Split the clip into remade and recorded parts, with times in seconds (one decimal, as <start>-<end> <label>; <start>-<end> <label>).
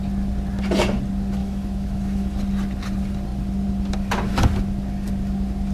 0.0-1.4 recorded; 1.4-2.4 remade; 2.4-5.7 recorded